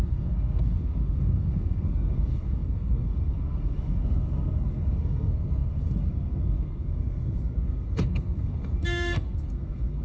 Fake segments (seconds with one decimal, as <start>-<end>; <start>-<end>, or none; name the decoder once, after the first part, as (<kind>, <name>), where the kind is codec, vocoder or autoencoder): 0.0-10.0 (codec, SNAC)